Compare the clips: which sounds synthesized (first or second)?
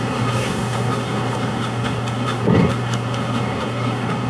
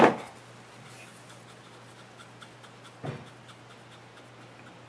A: first